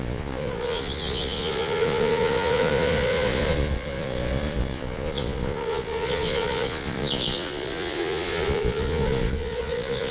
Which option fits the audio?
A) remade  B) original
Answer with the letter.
A